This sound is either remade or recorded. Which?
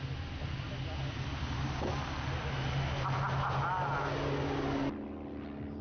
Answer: recorded